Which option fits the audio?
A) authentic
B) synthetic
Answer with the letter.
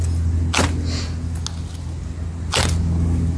A